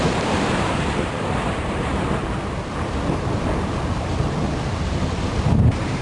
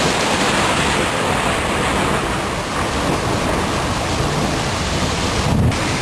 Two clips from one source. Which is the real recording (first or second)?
second